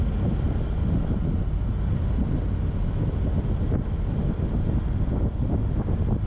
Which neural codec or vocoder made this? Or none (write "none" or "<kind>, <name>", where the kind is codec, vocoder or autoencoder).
none